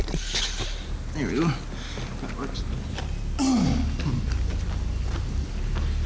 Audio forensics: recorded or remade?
recorded